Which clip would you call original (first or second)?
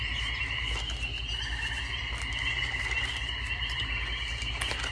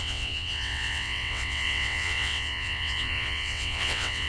first